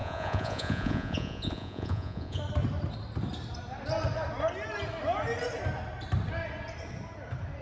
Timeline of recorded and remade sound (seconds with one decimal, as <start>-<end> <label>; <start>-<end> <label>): 0.0-2.4 remade; 2.4-7.6 recorded